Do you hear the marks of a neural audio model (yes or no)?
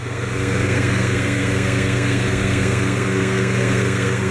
yes